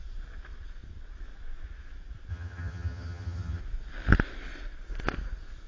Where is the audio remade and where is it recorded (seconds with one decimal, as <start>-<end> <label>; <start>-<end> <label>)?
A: 0.0-2.3 recorded; 2.3-3.6 remade; 3.6-5.7 recorded